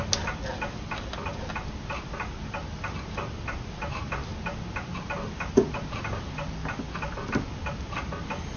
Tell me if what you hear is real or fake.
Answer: real